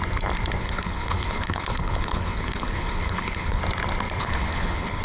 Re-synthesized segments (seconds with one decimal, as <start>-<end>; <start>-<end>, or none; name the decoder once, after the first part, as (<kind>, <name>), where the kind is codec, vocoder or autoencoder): 0.6-3.6 (codec, HILCodec); 4.2-5.0